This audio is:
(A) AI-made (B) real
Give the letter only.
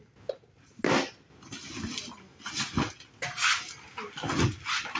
B